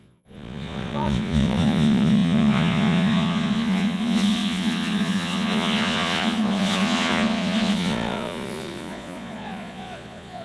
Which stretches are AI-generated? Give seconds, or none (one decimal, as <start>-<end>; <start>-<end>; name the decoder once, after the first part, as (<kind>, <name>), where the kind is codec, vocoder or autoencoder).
0.0-10.4 (vocoder, Vocos)